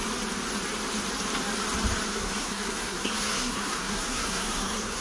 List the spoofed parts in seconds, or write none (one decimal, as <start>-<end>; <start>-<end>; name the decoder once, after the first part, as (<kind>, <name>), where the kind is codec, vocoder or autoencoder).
2.1-5.0 (codec, SNAC)